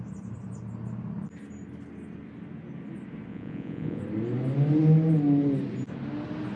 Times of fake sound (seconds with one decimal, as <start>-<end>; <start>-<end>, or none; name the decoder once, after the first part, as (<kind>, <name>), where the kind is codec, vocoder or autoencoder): 3.3-4.0 (vocoder, Vocos)